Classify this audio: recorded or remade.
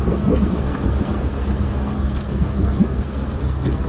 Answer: remade